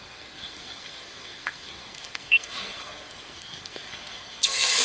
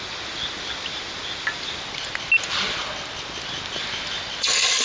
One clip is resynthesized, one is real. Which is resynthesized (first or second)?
first